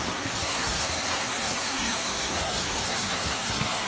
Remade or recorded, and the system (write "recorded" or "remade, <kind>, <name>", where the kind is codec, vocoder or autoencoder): remade, codec, SNAC